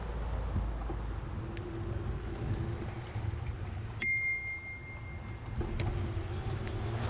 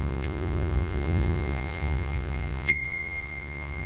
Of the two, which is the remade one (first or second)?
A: second